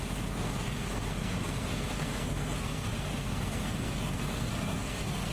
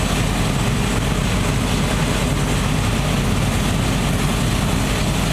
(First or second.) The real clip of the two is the second